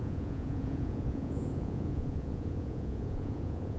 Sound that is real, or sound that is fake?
fake